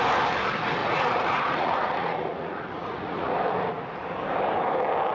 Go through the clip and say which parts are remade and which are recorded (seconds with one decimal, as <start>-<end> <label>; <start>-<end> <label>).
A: 0.0-0.8 recorded; 0.8-3.3 remade; 3.3-5.1 recorded